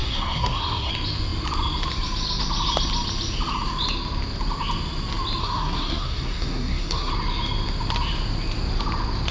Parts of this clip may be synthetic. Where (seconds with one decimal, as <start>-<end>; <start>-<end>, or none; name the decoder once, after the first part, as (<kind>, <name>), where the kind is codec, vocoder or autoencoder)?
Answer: 0.0-0.9 (codec, SNAC); 5.4-7.1